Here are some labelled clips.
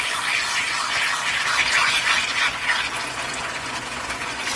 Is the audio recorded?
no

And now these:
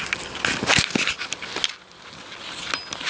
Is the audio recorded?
yes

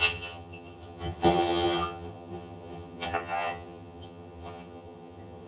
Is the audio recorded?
no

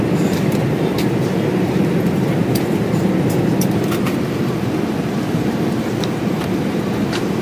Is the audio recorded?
no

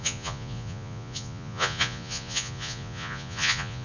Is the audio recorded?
no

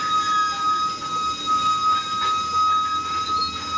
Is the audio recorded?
yes